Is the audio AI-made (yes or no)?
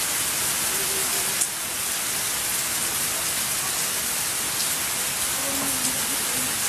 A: no